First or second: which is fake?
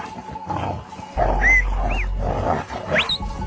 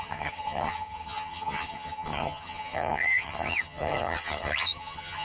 second